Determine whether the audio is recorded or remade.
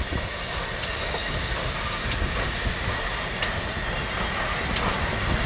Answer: recorded